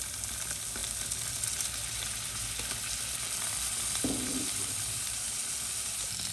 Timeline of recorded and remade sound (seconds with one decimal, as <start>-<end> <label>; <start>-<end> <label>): 0.0-6.3 recorded